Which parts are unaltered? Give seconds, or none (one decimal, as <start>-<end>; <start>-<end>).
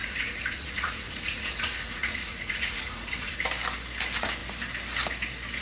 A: 3.4-5.6